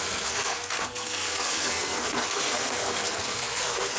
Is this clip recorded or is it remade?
remade